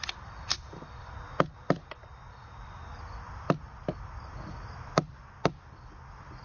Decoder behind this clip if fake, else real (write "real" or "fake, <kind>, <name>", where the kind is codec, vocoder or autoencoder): real